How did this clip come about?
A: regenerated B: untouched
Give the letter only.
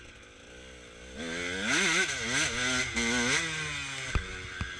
B